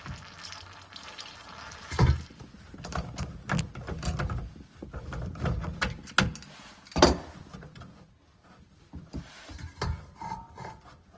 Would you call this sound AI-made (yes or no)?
no